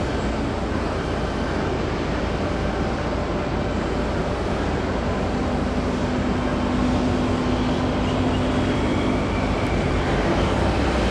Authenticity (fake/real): real